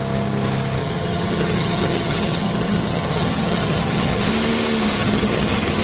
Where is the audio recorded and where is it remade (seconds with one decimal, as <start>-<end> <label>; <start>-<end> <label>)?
0.0-0.8 recorded; 0.8-4.3 remade; 4.3-5.0 recorded; 5.0-5.8 remade